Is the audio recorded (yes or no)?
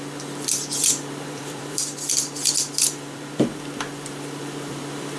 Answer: no